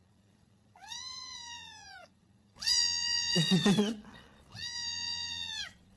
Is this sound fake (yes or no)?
yes